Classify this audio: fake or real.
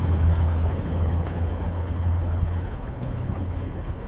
fake